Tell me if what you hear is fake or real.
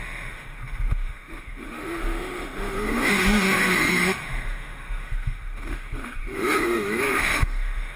fake